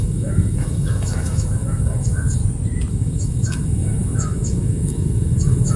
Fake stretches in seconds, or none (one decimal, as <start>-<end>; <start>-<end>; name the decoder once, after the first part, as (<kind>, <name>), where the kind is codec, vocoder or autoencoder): 0.0-2.4 (autoencoder, DAC-VAE); 2.9-5.8